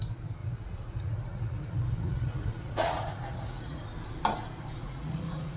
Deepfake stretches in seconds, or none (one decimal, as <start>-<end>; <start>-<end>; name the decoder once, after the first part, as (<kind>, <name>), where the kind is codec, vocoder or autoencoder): 0.4-3.8 (vocoder, Vocos); 4.8-5.6